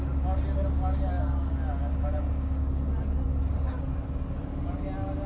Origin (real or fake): real